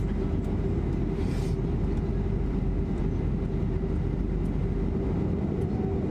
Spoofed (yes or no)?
no